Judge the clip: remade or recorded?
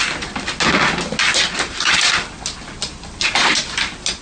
recorded